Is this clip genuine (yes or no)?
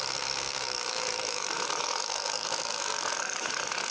no